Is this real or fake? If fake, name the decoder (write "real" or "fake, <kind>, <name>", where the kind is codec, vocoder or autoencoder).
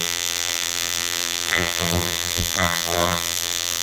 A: fake, vocoder, BigVGAN v2